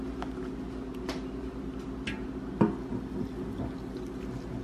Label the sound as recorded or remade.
recorded